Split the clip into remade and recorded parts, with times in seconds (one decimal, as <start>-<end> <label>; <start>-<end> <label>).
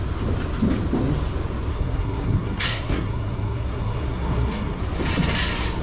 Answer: 0.0-1.7 recorded; 1.7-4.8 remade; 4.8-5.8 recorded